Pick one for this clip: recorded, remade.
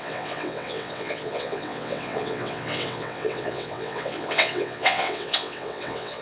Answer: remade